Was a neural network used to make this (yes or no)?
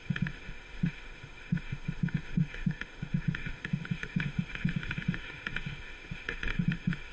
yes